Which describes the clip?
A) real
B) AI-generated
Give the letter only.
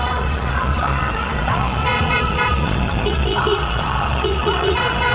B